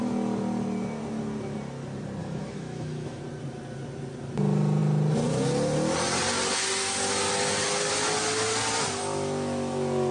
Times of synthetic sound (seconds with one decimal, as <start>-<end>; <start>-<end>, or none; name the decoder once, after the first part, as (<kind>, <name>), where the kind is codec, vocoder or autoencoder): 2.2-3.2 (autoencoder, DAC-VAE)

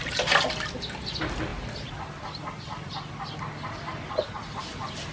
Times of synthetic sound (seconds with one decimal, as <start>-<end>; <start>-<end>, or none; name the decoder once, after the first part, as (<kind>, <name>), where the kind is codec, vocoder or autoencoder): none

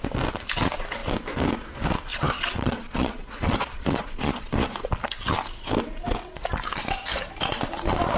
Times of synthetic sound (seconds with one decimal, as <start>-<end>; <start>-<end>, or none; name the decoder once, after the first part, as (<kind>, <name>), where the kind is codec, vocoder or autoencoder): 2.1-4.9 (vocoder, Vocos)

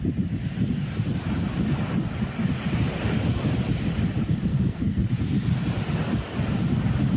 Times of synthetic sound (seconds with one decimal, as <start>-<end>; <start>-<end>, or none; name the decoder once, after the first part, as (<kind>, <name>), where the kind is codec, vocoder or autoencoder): 4.5-5.1 (codec, SNAC)